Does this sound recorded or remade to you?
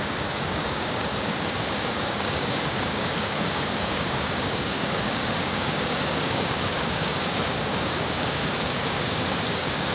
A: remade